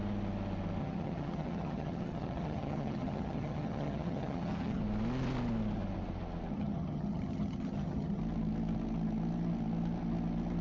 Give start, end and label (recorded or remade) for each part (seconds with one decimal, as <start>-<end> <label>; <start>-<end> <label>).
0.0-0.8 recorded; 0.8-4.8 remade; 4.8-6.5 recorded; 6.5-8.2 remade; 8.2-10.6 recorded